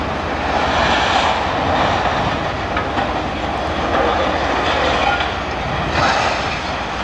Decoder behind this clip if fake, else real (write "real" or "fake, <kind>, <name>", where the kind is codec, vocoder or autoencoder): real